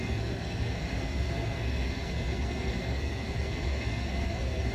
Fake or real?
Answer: fake